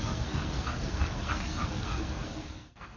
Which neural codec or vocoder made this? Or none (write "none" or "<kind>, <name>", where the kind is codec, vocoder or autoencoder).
codec, SNAC